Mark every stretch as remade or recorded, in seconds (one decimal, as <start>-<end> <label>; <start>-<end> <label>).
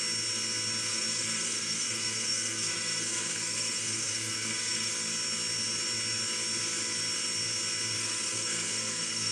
0.0-0.9 recorded; 0.9-4.9 remade; 4.9-8.0 recorded; 8.0-9.3 remade